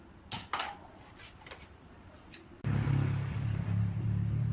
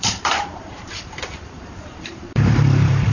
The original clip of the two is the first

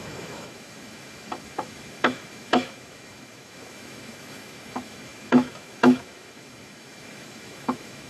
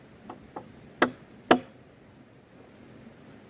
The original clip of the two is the second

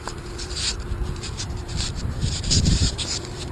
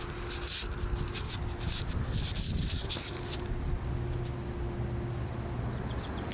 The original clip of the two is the second